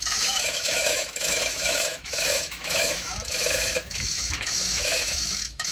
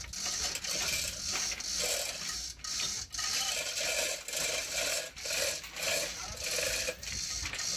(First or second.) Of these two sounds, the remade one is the first